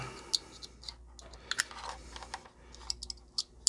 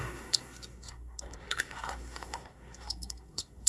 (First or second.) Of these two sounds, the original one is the first